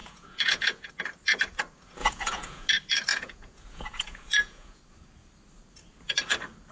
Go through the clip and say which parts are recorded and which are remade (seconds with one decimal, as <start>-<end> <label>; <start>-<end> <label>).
0.0-0.9 remade; 0.9-2.0 recorded; 2.0-2.7 remade; 2.7-3.1 recorded; 3.1-4.8 remade; 4.8-6.7 recorded